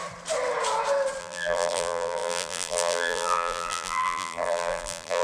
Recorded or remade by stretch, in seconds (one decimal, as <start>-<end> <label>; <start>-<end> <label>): 0.0-1.2 recorded; 1.2-5.2 remade